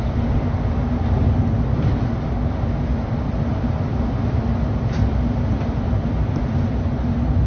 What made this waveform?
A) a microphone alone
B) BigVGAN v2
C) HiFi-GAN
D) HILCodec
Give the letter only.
A